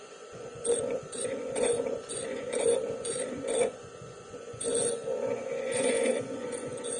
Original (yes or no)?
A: no